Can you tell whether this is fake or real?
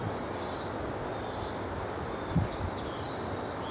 real